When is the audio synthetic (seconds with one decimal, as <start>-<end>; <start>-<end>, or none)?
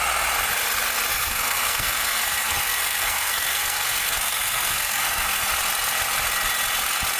1.1-5.4